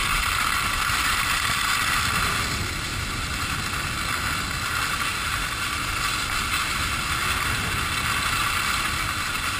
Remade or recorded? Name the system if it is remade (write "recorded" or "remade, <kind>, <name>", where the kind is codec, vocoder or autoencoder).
recorded